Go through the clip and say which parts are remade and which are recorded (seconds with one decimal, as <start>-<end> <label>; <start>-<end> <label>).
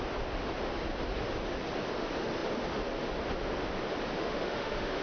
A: 0.0-4.2 recorded; 4.2-5.0 remade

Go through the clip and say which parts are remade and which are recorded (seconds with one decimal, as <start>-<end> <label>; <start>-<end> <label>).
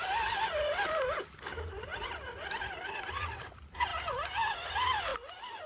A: 0.0-1.9 remade; 1.9-2.6 recorded; 2.6-3.9 remade; 3.9-4.5 recorded; 4.5-5.1 remade; 5.1-5.7 recorded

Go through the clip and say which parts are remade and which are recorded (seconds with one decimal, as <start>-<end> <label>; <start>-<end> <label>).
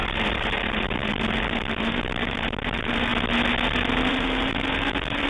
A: 0.0-3.1 remade; 3.1-4.1 recorded; 4.1-5.3 remade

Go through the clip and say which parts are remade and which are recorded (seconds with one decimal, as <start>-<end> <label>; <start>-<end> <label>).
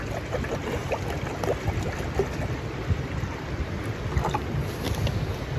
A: 0.0-5.6 recorded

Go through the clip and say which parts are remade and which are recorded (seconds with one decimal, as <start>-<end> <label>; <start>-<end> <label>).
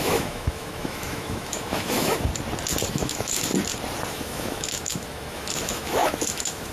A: 0.0-2.3 remade; 2.3-2.9 recorded; 2.9-3.5 remade; 3.5-4.1 recorded; 4.1-6.7 remade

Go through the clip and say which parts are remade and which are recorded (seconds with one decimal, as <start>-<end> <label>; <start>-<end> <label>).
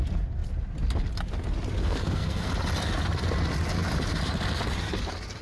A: 0.0-1.8 recorded; 1.8-2.5 remade; 2.5-5.4 recorded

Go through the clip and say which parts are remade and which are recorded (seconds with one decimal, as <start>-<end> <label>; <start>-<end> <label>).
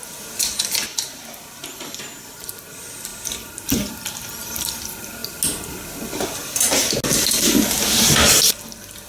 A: 0.0-9.1 recorded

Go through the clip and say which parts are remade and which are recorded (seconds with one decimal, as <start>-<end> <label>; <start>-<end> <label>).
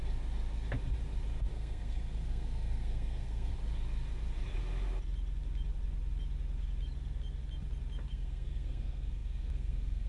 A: 0.0-1.5 recorded; 1.5-3.5 remade; 3.5-8.1 recorded; 8.1-10.1 remade